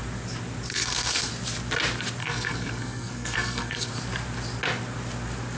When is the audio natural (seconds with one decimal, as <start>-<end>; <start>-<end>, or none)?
0.0-0.7; 1.3-2.2; 3.9-5.6

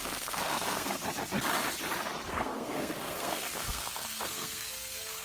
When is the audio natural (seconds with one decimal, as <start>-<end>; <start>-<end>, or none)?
1.0-2.3

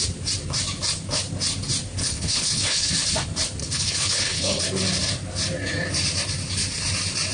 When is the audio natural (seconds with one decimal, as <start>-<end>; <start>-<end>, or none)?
0.0-2.0; 2.9-3.6; 4.6-7.3

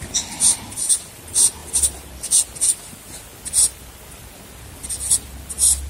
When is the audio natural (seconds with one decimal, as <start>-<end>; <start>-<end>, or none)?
0.0-5.9

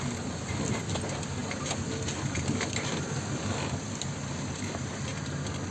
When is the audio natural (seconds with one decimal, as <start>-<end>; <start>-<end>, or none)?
0.0-5.7